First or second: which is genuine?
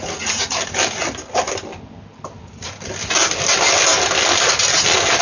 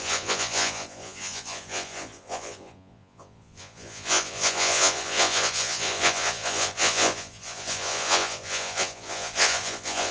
first